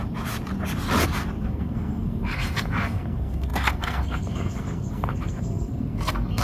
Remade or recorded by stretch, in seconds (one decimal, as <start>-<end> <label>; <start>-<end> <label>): 0.0-1.4 recorded; 1.4-6.4 remade